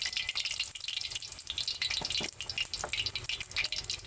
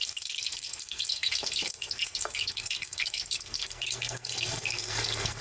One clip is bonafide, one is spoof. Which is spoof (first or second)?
second